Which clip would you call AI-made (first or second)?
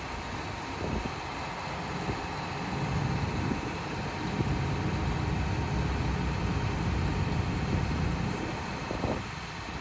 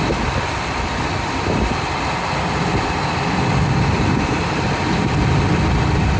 second